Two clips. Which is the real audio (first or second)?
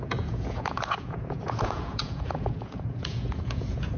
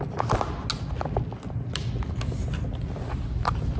second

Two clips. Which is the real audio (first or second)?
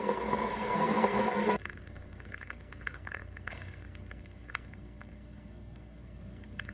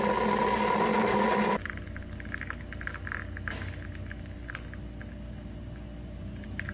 second